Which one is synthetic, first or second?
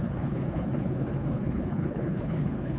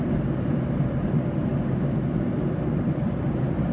first